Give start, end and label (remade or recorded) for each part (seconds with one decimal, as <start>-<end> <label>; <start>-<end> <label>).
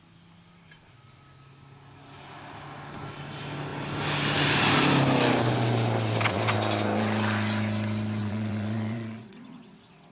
0.0-8.2 recorded; 8.2-10.1 remade